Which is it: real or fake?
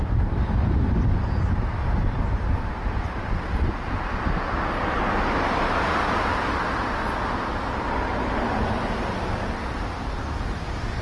real